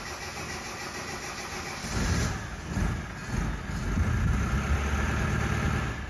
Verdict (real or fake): real